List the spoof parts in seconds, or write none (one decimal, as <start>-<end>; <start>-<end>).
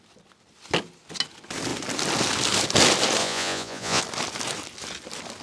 3.2-4.0